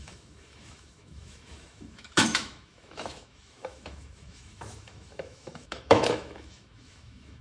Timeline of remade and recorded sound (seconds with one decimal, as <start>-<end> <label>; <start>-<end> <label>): 0.0-7.4 remade